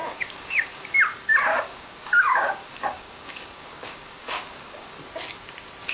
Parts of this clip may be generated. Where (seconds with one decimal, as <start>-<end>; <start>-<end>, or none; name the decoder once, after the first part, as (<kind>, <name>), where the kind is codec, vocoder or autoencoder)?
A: 0.0-1.0 (codec, DAC); 1.5-5.0